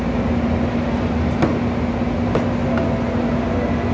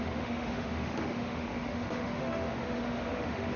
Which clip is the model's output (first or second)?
second